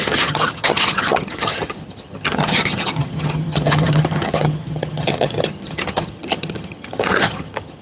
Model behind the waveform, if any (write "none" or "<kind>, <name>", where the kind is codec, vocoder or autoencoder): vocoder, HiFi-GAN